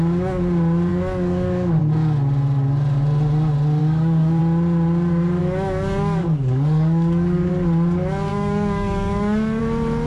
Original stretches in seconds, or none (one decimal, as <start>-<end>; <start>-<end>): 0.0-0.9; 1.8-3.8; 4.4-5.4; 7.5-8.3; 9.6-10.1